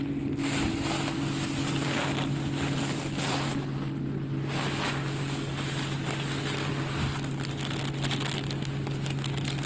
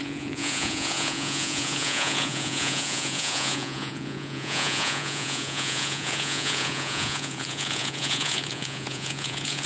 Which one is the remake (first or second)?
second